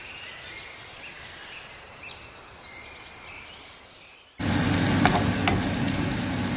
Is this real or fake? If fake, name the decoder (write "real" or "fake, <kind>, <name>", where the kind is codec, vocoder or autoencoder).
real